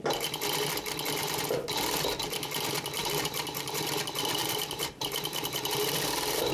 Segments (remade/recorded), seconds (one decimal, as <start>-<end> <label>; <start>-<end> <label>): 0.0-3.0 recorded; 3.0-3.9 remade; 3.9-4.4 recorded; 4.4-6.5 remade